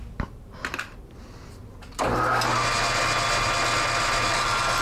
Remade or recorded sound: recorded